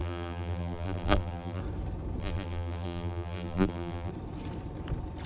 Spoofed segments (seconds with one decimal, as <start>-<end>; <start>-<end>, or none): 0.0-1.6; 2.2-4.1